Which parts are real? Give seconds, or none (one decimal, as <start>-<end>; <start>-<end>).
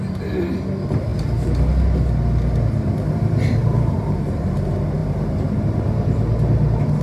0.0-3.6; 4.3-7.0